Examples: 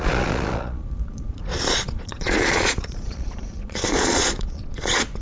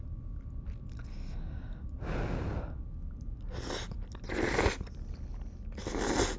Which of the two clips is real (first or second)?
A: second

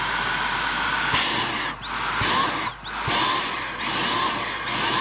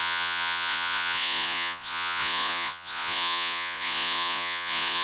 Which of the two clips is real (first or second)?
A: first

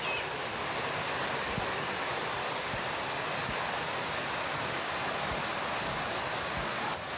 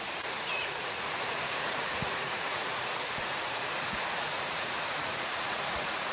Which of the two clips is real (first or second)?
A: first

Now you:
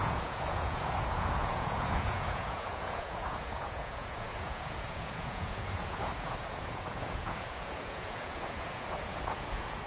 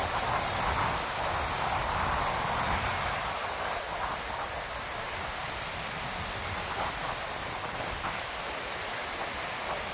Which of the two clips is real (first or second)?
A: second